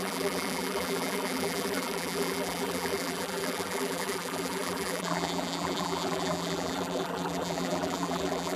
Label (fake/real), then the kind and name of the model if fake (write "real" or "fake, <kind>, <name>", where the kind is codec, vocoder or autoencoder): fake, vocoder, BigVGAN v2